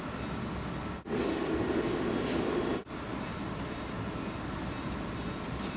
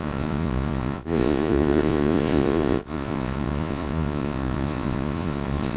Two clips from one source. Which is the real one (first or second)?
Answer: first